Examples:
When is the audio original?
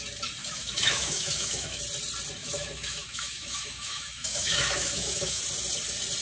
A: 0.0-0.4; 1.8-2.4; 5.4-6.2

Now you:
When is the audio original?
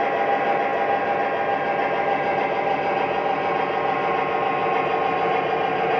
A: 0.0-6.0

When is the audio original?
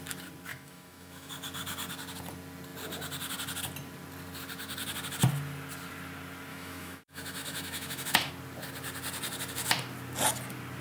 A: 0.0-0.5; 1.3-6.5; 8.3-10.8